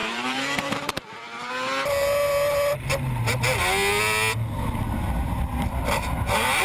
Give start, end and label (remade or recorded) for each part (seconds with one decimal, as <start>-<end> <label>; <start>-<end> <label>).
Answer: 0.0-1.5 remade; 1.5-6.6 recorded